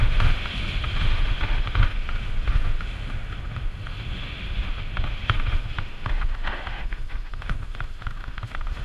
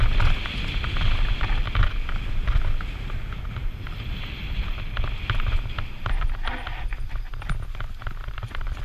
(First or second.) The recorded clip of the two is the second